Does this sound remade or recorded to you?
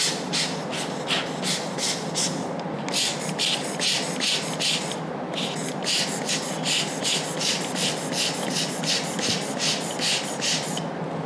recorded